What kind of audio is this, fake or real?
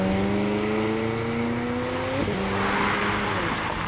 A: real